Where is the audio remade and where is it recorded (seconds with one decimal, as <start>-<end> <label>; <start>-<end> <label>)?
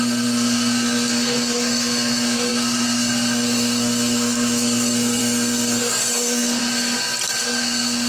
0.0-6.6 remade; 6.6-7.4 recorded; 7.4-8.1 remade